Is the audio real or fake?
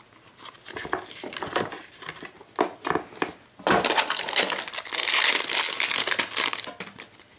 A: real